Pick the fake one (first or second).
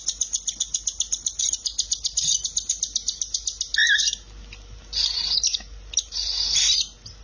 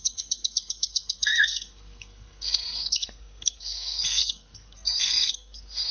second